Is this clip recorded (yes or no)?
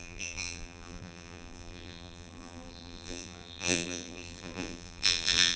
no